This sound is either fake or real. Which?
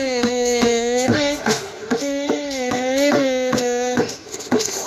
fake